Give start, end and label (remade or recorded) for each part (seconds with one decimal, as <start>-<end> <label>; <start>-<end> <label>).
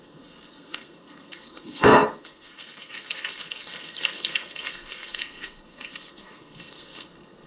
0.0-7.5 remade